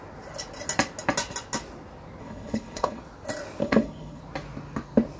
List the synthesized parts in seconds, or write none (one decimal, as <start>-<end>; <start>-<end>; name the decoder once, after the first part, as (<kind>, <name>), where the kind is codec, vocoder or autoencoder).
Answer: 2.2-3.0 (codec, HILCodec); 3.6-4.2